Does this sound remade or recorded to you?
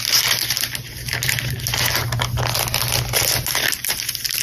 recorded